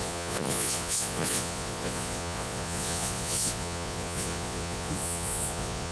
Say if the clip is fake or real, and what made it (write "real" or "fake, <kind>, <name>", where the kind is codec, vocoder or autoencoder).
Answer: fake, vocoder, Vocos